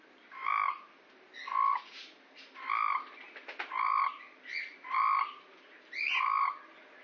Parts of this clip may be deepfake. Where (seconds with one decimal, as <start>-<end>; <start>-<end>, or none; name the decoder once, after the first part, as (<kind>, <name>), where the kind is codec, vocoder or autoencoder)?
none